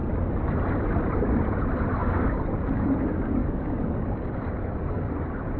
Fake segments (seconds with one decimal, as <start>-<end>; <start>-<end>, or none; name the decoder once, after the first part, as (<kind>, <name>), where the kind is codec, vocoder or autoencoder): 2.0-2.9 (codec, DAC); 3.4-5.1